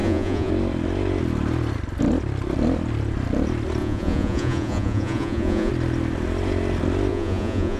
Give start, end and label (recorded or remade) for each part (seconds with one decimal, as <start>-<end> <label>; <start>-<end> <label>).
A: 0.0-0.5 remade; 0.5-3.8 recorded; 3.8-5.7 remade; 5.7-7.1 recorded; 7.1-7.8 remade